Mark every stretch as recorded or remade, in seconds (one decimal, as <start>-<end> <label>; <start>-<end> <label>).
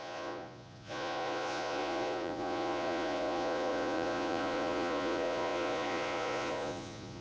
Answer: 0.0-7.2 remade